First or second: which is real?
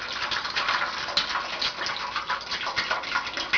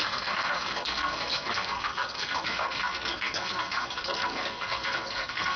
first